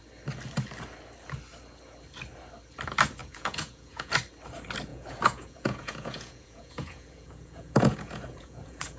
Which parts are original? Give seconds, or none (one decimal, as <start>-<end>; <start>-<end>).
0.0-3.2; 4.1-4.9